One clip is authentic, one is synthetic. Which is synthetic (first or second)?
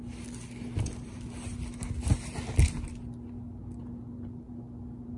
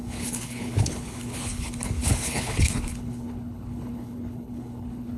second